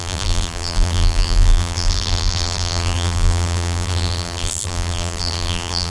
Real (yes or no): no